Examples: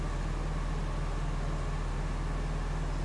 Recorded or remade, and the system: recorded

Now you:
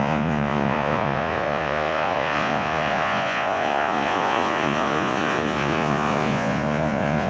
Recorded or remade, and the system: remade, vocoder, Vocos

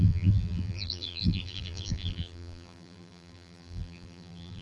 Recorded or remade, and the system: remade, vocoder, BigVGAN v2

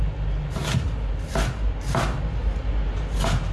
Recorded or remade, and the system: recorded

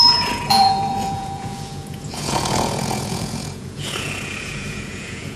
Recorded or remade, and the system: remade, vocoder, Vocos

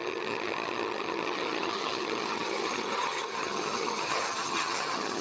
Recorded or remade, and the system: remade, vocoder, HiFi-GAN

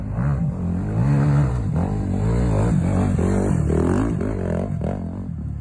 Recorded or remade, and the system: recorded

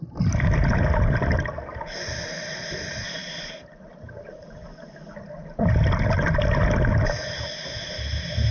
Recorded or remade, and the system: recorded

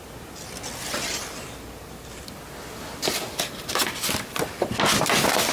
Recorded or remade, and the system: recorded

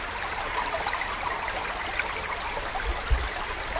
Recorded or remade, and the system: recorded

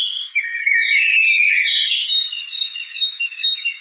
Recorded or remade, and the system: remade, codec, DAC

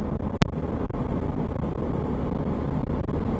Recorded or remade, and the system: recorded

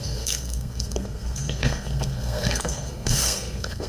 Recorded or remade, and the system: remade, codec, SNAC